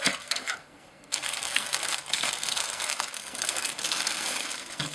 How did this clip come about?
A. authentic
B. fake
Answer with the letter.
B